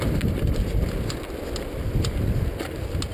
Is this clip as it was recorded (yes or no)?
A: yes